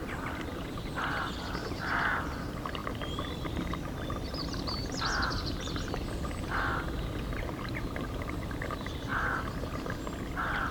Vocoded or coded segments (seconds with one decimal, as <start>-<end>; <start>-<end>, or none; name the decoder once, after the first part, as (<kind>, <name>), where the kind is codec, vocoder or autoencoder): none